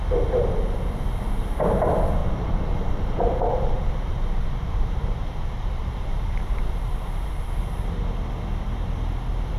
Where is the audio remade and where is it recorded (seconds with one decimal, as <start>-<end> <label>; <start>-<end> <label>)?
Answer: 0.0-2.2 recorded; 2.2-7.5 remade; 7.5-9.6 recorded